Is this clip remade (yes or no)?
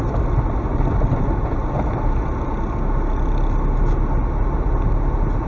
no